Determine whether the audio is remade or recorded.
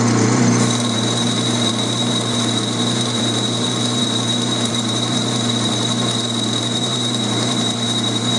remade